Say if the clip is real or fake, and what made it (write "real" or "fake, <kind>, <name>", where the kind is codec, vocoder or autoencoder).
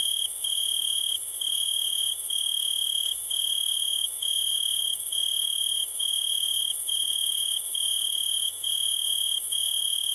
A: fake, autoencoder, DAC-VAE